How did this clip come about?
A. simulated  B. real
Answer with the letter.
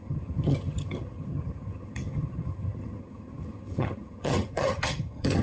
A